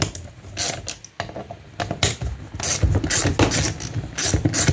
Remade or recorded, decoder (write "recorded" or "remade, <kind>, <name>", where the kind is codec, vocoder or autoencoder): recorded